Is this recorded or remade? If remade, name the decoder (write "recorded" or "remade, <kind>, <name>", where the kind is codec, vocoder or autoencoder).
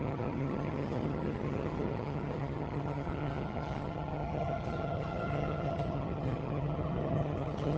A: remade, vocoder, HiFi-GAN